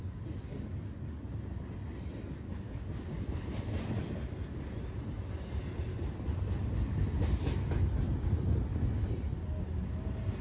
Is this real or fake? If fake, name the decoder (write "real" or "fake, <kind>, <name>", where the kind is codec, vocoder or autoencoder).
real